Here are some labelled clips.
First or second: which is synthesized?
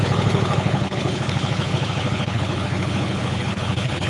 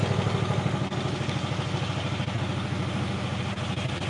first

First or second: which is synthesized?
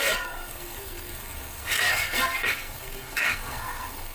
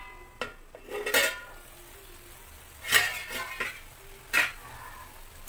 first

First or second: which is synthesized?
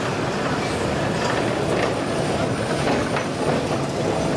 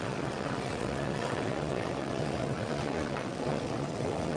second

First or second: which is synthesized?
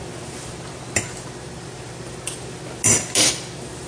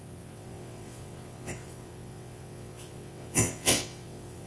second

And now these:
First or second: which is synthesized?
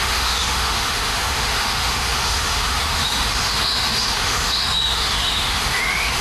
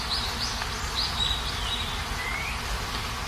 first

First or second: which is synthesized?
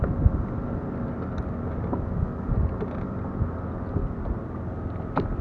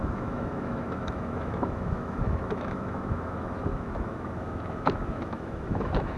second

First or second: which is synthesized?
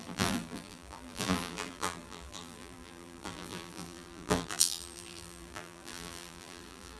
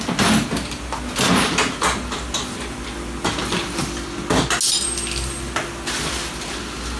first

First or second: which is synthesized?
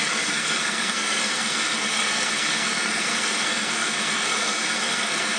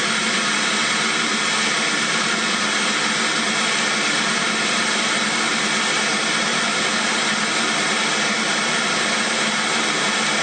first